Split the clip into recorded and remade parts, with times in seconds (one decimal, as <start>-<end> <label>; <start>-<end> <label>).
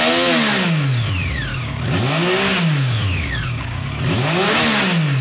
0.0-1.5 recorded; 1.5-4.6 remade; 4.6-5.2 recorded